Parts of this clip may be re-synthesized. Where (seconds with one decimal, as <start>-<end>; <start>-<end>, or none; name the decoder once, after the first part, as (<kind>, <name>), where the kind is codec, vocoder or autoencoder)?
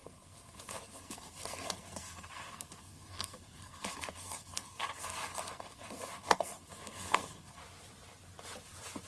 0.0-7.6 (codec, SNAC)